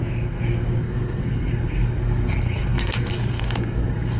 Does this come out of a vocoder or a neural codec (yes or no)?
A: yes